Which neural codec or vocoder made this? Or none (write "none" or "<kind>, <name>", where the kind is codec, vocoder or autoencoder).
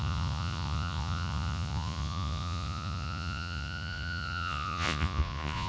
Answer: vocoder, Vocos